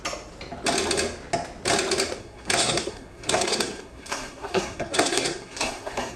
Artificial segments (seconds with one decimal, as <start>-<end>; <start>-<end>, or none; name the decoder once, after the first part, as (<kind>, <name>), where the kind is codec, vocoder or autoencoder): 2.2-6.2 (codec, SNAC)